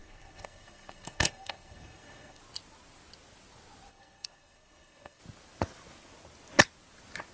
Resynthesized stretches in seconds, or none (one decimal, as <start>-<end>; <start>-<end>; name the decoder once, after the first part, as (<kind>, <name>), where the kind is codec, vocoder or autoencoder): 0.0-2.4 (codec, SNAC); 3.9-5.2